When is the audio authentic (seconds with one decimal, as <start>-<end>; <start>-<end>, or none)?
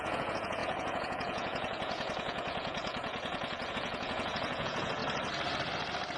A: 5.0-6.2